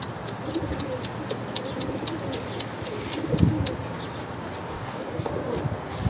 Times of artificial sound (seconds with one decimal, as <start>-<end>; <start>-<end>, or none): 4.7-5.3